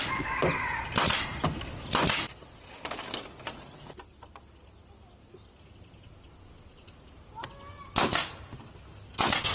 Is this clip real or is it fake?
real